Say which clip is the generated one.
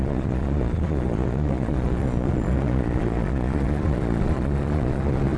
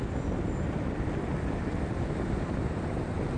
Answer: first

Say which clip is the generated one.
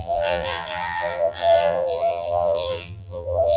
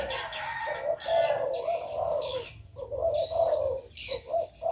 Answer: first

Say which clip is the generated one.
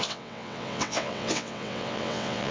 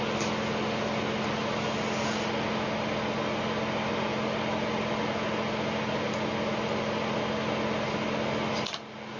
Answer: first